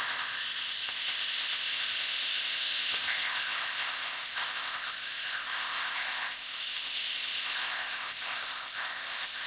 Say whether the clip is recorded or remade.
remade